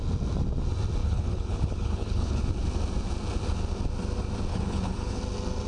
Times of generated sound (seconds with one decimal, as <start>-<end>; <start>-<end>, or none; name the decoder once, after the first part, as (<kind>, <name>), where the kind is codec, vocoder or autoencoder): 1.0-2.4 (codec, HILCodec); 4.5-5.2